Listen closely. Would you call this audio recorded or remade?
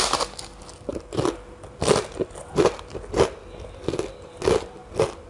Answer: recorded